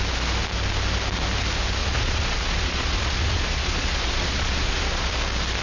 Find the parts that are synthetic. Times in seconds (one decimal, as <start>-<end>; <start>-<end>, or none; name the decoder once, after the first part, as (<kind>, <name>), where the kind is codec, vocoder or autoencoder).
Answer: 1.8-5.1 (vocoder, Vocos)